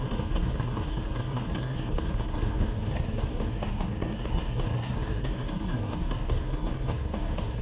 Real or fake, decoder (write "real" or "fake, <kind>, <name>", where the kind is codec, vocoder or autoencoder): fake, codec, SNAC